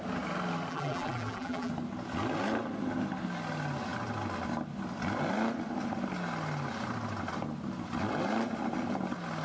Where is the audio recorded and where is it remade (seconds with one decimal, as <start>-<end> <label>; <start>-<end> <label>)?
0.0-0.7 recorded; 0.7-1.7 remade; 1.7-9.4 recorded